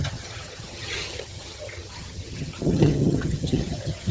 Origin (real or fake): fake